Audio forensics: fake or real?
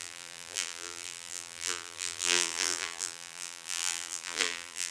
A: fake